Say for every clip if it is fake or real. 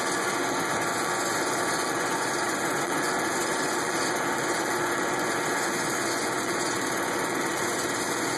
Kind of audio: fake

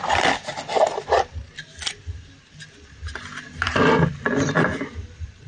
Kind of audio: real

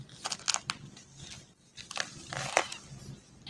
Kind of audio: real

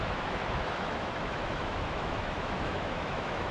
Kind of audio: fake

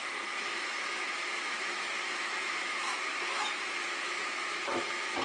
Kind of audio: fake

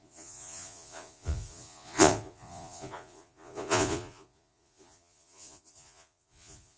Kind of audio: fake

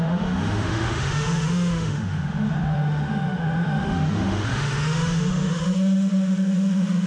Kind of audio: fake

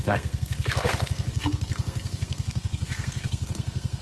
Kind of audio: fake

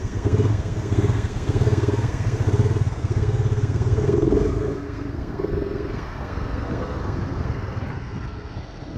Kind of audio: fake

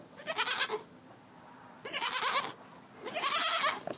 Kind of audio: real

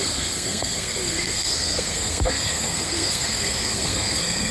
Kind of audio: fake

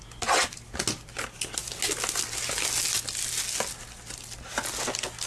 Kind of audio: real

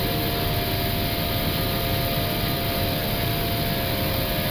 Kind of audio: real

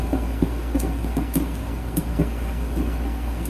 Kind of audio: fake